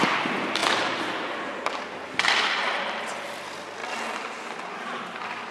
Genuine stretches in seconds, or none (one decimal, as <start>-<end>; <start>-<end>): 0.0-5.5